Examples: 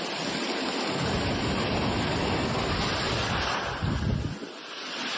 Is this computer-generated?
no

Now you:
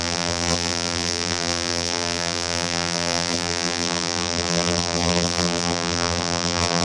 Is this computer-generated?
yes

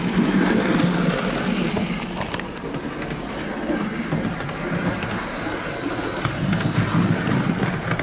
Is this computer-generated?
no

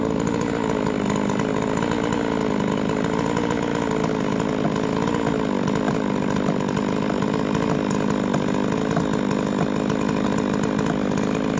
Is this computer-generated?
no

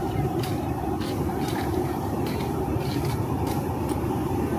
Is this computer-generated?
yes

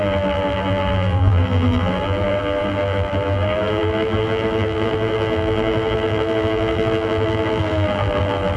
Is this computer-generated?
yes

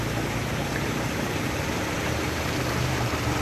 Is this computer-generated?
yes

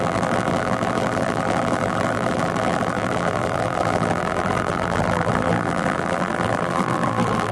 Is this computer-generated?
yes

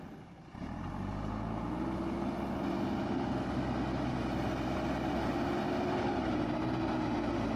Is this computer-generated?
no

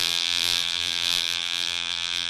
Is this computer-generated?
yes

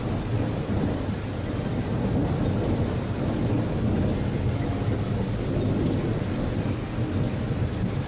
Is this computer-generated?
no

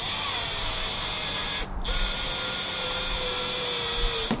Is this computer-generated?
no